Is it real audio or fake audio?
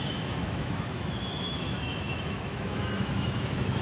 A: fake